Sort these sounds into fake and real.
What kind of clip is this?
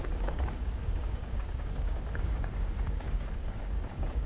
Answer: fake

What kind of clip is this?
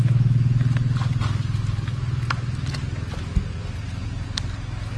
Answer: real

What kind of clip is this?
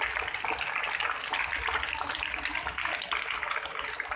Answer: real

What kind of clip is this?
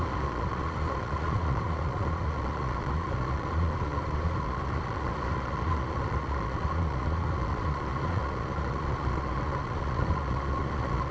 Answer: fake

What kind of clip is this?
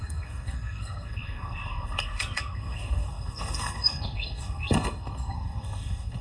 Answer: fake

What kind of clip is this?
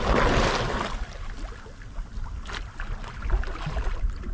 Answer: real